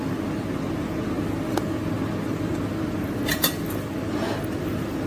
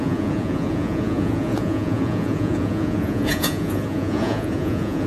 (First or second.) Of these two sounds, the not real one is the second